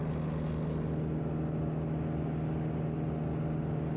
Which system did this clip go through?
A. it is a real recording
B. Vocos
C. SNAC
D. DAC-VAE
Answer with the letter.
A